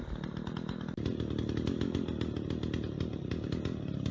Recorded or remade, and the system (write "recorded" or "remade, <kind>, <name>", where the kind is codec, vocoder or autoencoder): recorded